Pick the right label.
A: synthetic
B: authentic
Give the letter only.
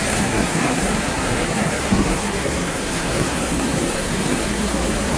A